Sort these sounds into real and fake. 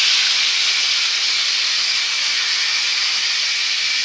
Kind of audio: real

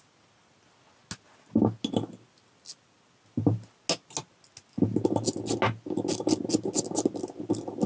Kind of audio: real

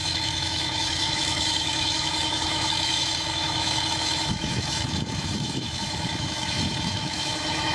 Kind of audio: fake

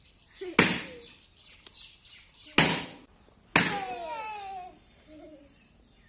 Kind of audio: real